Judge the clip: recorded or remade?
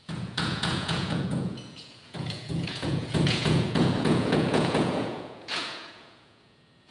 remade